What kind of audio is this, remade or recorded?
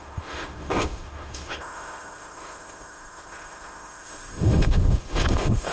remade